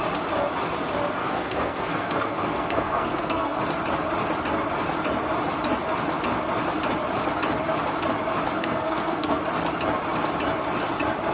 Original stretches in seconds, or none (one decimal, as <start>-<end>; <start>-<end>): 0.0-1.2; 3.6-8.6; 9.4-11.3